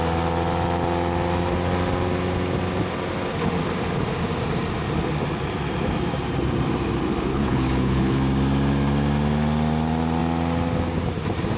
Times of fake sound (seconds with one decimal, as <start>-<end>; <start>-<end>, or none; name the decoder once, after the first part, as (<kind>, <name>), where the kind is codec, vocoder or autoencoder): 7.3-8.2 (codec, HILCodec)